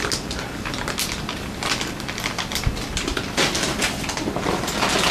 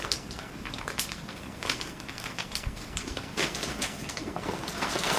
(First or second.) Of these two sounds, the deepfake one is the second